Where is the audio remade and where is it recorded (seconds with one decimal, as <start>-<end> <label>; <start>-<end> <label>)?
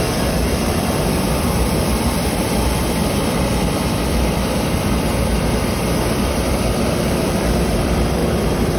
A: 0.0-8.2 remade; 8.2-8.8 recorded